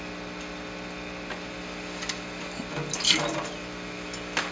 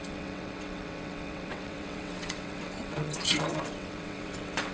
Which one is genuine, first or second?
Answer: first